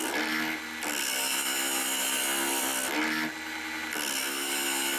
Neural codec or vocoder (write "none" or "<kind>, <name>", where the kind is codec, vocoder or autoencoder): none